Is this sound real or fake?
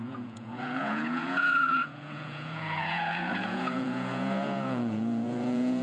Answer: fake